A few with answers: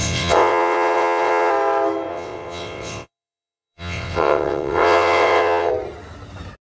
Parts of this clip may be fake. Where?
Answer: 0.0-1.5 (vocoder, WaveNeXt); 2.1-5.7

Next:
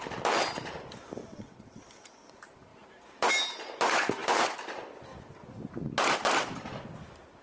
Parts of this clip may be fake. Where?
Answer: 1.2-1.8 (vocoder, WaveNeXt)

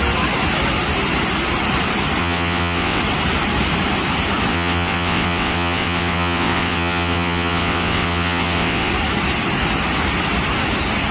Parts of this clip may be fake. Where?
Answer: 2.2-3.0 (vocoder, WaveNeXt); 4.5-8.9